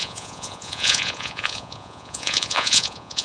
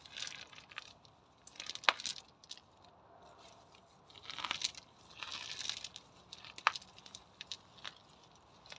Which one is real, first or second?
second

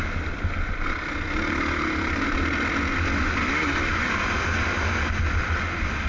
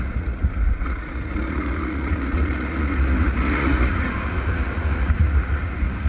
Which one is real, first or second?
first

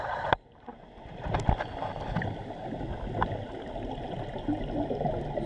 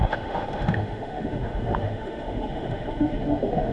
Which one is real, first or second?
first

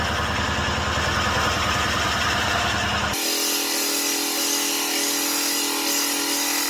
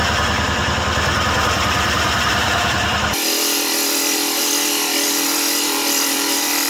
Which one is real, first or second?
first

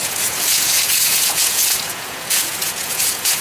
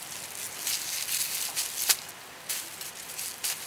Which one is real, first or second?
second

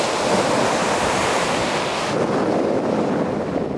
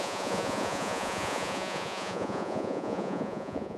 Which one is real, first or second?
first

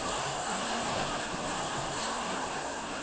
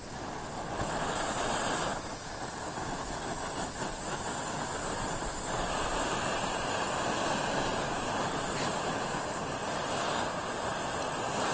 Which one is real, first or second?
second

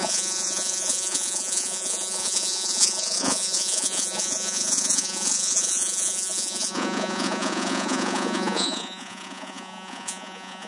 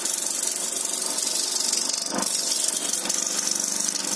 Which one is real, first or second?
second